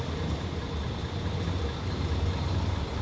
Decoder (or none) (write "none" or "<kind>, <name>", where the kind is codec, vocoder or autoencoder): none